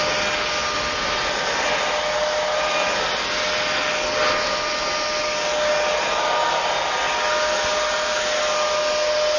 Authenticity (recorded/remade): recorded